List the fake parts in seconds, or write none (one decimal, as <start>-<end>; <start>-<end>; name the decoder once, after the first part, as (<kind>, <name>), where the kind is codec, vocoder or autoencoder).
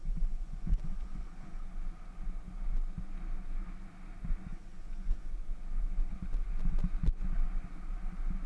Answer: 0.0-1.6 (vocoder, Vocos); 4.5-5.3